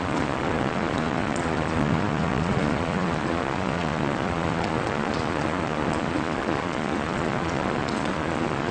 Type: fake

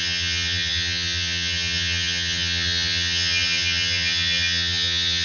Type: fake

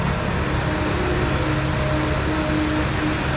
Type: real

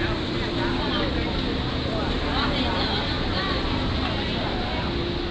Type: real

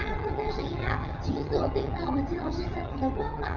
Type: fake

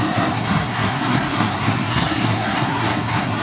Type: fake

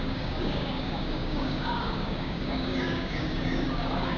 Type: fake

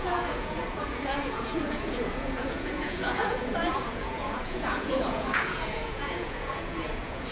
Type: fake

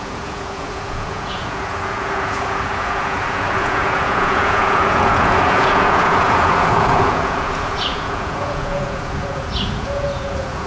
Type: fake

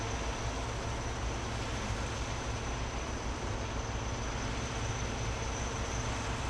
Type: real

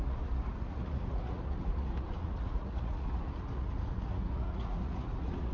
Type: fake